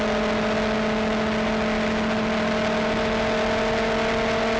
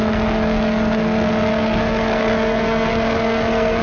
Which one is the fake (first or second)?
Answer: second